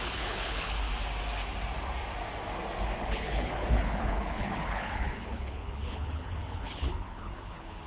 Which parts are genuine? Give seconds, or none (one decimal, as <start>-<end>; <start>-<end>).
0.8-3.0